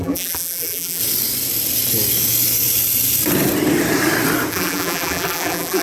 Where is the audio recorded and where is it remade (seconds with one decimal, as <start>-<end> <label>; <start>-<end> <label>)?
0.0-1.0 remade; 1.0-4.5 recorded; 4.5-5.8 remade